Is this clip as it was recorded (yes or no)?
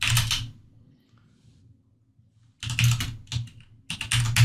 yes